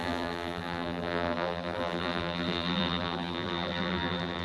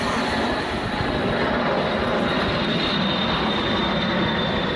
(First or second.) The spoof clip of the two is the first